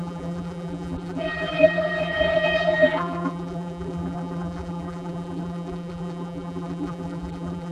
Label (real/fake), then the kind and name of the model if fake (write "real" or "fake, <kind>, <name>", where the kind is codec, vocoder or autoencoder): fake, vocoder, BigVGAN v2